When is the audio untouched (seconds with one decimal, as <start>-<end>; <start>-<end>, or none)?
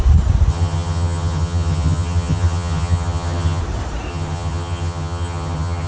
0.0-0.5; 3.6-4.1